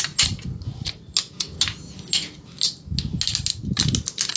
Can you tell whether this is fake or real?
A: real